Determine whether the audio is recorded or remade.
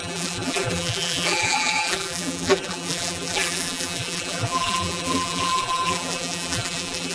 remade